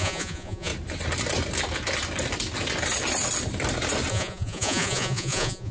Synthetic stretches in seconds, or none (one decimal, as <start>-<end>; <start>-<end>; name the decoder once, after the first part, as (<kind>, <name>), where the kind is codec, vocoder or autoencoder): 0.0-0.7 (vocoder, Vocos); 4.1-5.7